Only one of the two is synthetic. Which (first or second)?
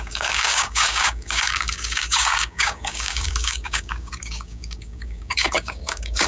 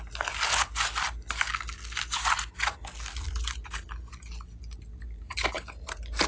first